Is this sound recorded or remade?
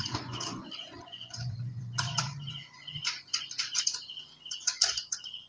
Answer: remade